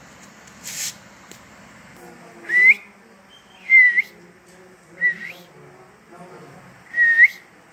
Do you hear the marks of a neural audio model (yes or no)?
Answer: no